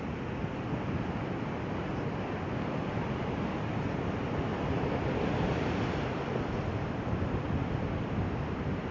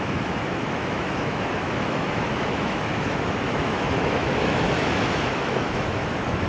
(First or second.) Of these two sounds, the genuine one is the first